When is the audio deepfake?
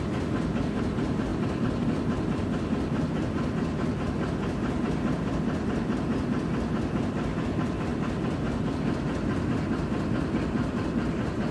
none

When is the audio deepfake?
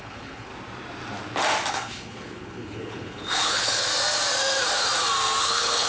0.0-0.5 (codec, HILCodec); 1.7-3.9; 5.4-5.9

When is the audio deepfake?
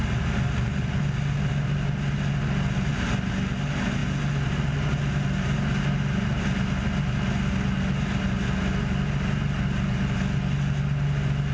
none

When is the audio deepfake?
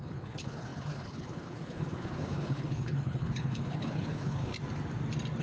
0.0-4.5 (codec, HILCodec)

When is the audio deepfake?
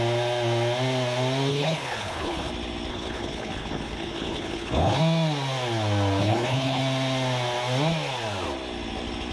1.5-2.5 (codec, HILCodec); 2.9-5.0; 6.2-6.8